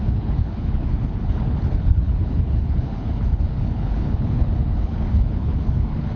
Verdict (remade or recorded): remade